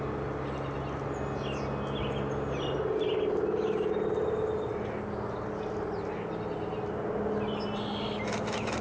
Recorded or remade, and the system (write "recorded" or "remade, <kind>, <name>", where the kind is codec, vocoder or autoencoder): recorded